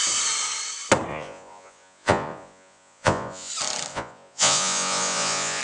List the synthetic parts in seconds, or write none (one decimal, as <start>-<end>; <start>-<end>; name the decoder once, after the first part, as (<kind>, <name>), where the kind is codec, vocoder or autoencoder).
1.1-3.5 (vocoder, Vocos); 3.9-5.6